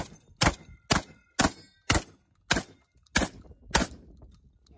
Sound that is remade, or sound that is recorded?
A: recorded